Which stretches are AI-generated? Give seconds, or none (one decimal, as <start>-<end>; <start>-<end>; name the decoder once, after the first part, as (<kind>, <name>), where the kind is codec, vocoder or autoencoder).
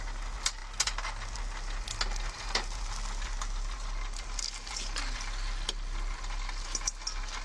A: none